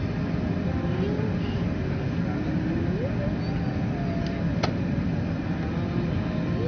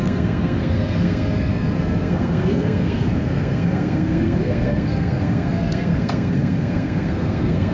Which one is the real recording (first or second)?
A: first